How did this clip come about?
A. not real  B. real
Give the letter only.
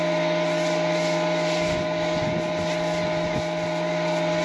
B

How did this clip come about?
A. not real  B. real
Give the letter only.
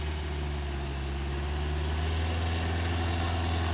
B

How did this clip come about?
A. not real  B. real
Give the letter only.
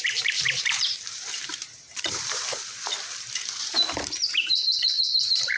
A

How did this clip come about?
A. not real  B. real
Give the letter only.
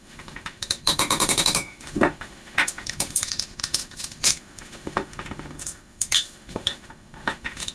A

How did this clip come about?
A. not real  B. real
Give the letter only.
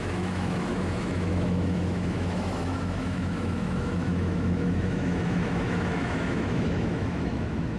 A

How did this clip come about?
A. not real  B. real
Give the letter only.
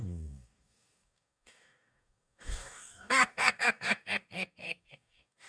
A